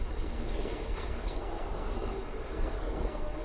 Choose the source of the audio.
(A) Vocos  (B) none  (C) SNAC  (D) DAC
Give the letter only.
C